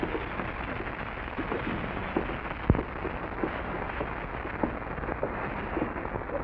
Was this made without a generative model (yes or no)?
yes